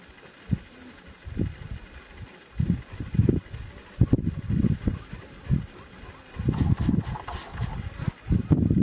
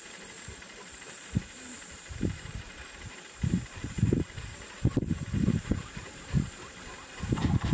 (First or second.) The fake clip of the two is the second